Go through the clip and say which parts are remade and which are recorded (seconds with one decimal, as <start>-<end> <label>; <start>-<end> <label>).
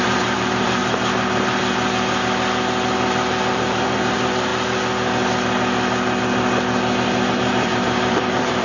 0.0-0.8 remade; 0.8-3.5 recorded; 3.5-4.5 remade; 4.5-7.3 recorded; 7.3-8.6 remade